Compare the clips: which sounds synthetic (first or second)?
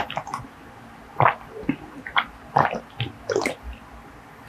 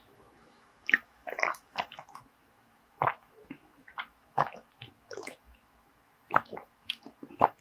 second